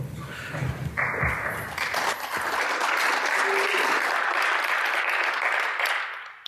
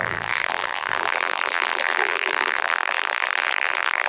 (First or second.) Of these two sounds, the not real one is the second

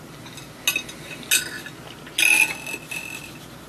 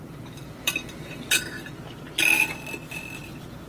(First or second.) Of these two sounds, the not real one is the second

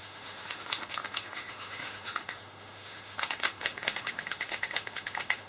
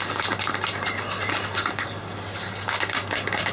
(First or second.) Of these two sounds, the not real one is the first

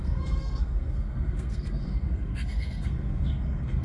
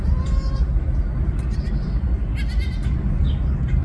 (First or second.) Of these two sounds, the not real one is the first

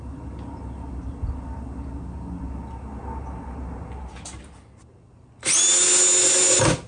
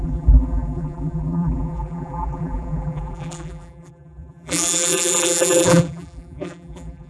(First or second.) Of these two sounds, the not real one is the second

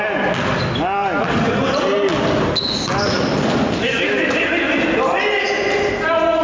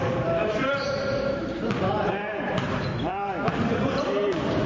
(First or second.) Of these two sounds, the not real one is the second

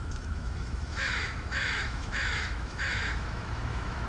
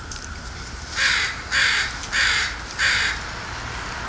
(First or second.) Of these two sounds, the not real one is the first